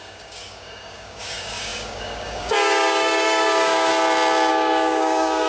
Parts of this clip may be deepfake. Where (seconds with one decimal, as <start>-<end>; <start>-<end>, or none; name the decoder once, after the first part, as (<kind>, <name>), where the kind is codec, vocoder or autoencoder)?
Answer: 0.0-3.9 (codec, DAC); 4.5-5.5